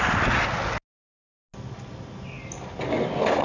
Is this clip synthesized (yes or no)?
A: no